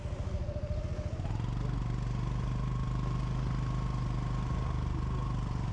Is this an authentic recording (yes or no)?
yes